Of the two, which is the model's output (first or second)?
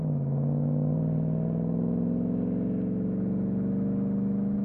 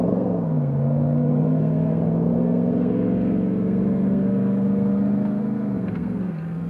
second